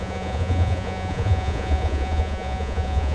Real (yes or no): no